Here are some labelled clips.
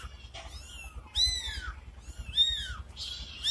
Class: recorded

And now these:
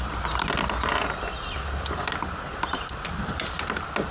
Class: recorded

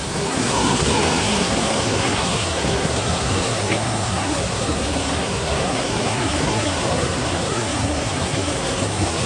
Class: remade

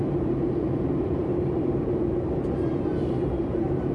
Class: remade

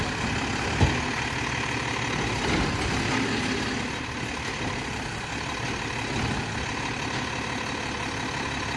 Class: recorded